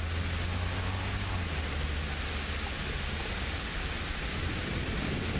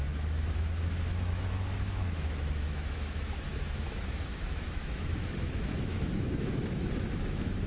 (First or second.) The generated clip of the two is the second